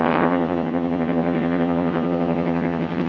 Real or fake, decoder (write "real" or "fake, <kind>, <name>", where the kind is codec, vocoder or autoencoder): fake, vocoder, HiFi-GAN